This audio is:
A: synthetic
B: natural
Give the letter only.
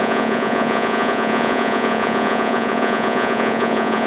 A